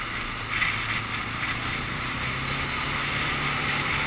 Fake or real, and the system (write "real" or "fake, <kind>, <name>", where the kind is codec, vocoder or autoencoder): real